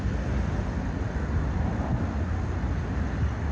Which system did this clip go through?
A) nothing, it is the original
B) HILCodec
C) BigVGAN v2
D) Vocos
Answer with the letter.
A